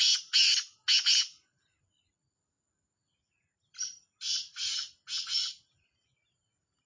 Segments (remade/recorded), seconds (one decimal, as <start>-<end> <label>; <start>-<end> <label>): 0.0-6.9 recorded